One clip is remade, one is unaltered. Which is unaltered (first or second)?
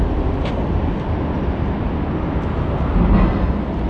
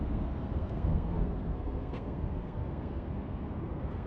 first